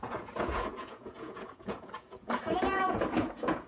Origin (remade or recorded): remade